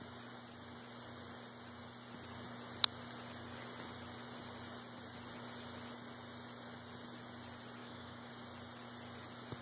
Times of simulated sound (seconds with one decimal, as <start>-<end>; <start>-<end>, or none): 7.8-8.3